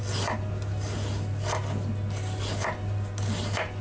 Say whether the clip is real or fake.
real